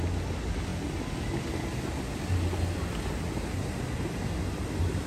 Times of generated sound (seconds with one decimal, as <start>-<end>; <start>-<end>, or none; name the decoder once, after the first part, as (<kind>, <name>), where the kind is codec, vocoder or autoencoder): none